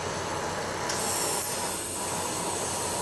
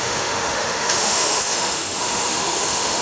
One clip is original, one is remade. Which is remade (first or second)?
second